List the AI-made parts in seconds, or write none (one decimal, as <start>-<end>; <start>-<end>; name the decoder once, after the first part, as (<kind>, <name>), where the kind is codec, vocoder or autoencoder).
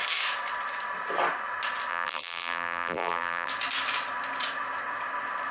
1.9-3.5 (vocoder, BigVGAN v2)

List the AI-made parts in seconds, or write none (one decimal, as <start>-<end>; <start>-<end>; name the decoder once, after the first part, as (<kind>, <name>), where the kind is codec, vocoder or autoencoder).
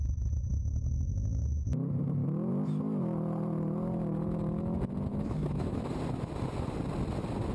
5.1-5.9 (autoencoder, DAC-VAE)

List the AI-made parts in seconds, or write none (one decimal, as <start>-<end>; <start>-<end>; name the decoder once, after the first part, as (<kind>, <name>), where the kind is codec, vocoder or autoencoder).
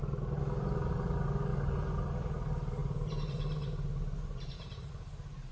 1.5-2.0 (vocoder, BigVGAN v2); 2.8-4.9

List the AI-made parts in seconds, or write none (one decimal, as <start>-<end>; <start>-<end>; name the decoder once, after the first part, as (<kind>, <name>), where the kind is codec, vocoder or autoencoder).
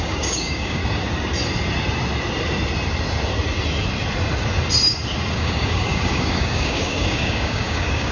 0.0-0.8 (codec, DAC); 5.3-8.1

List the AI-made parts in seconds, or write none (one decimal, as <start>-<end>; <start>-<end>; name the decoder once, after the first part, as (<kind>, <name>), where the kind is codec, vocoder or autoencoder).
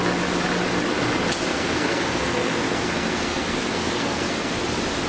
1.5-4.6 (codec, SNAC)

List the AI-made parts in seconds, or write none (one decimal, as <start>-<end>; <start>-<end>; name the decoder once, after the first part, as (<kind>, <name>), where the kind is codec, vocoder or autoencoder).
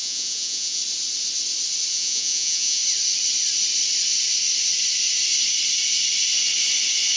0.0-0.8 (vocoder, Vocos); 1.9-2.8